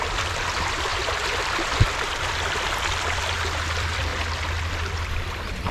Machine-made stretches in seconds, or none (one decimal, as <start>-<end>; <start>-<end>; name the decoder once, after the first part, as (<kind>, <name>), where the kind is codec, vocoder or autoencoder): 0.0-0.9 (vocoder, BigVGAN v2); 3.6-4.1; 4.9-5.7